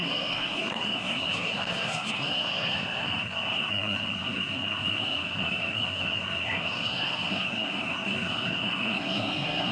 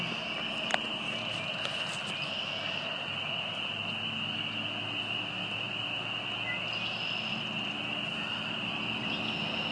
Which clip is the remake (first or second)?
first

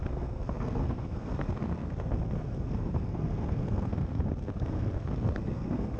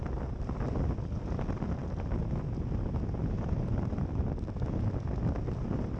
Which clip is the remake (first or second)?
first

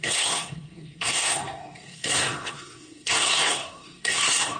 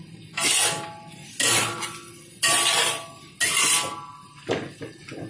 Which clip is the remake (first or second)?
first